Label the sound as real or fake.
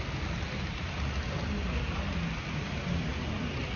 real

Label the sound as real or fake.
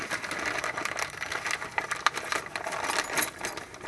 real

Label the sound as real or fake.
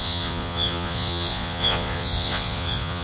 fake